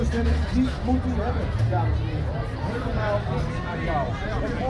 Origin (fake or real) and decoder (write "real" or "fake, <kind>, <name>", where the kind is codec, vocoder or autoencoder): real